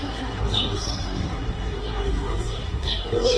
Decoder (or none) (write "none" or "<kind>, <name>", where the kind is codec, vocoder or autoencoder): codec, SNAC